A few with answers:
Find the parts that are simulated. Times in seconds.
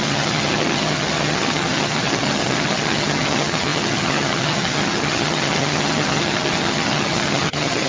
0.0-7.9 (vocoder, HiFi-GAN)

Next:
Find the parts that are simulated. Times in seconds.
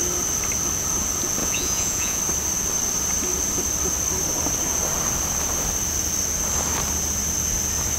1.4-2.2 (vocoder, Vocos)